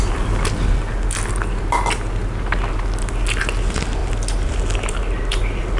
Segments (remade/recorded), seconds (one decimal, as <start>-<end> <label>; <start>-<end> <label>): 0.0-5.8 recorded

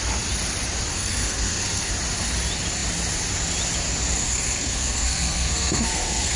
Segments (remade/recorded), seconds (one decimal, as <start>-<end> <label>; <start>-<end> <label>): 0.0-0.9 recorded; 0.9-1.9 remade; 1.9-4.2 recorded; 4.2-6.4 remade

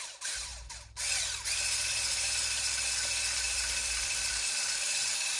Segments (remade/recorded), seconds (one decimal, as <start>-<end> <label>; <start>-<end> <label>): 0.0-0.5 remade; 0.5-2.9 recorded; 2.9-5.4 remade

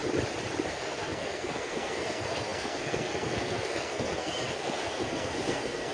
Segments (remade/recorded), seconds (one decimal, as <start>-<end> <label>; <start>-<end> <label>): 0.0-0.7 recorded; 0.7-5.9 remade

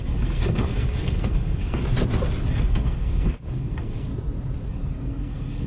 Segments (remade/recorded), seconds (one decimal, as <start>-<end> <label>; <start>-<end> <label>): 0.0-1.8 remade; 1.8-2.5 recorded; 2.5-4.1 remade; 4.1-4.7 recorded; 4.7-5.7 remade